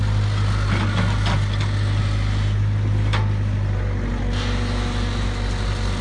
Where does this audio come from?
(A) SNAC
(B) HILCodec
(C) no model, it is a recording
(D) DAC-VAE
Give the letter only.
C